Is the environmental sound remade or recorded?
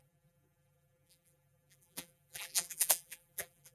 remade